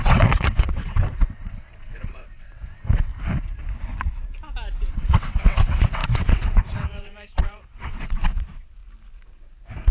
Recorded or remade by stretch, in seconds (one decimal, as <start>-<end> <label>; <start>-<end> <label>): 0.0-3.1 remade; 3.1-4.9 recorded; 4.9-8.8 remade; 8.8-9.9 recorded